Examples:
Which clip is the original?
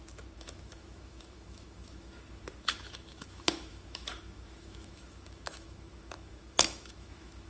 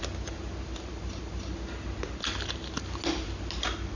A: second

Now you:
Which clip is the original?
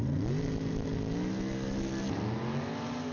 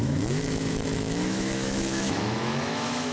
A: first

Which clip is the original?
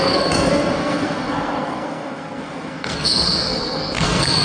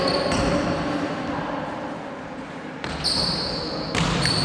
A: second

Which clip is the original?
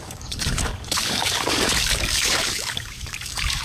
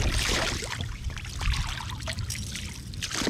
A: second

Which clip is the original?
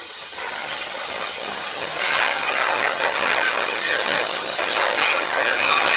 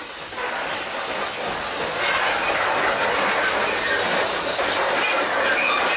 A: second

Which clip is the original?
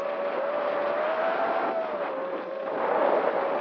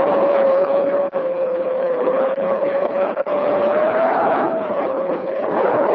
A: first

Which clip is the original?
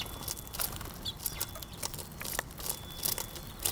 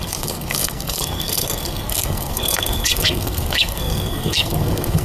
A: first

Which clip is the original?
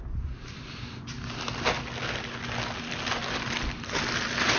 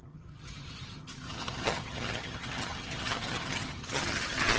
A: first